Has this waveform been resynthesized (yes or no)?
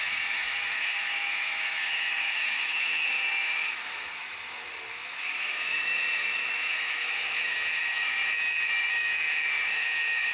yes